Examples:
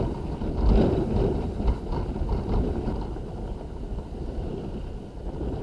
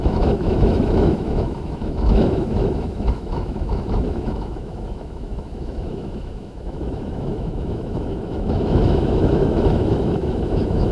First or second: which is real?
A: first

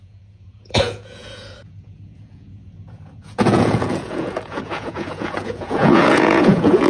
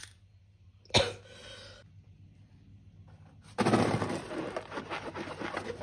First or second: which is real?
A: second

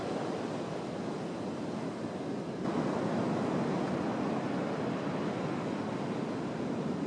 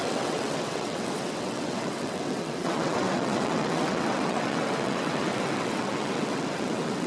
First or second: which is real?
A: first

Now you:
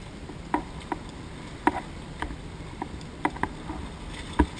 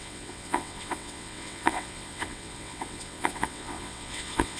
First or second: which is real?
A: first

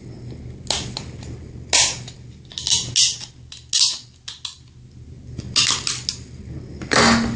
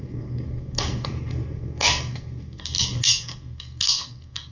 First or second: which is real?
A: first